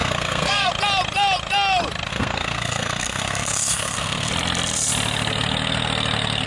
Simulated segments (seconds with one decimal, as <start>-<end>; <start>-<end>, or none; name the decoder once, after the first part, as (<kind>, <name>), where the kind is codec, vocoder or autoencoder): 0.0-0.7 (codec, SNAC); 2.1-4.3